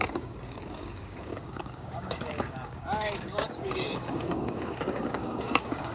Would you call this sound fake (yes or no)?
yes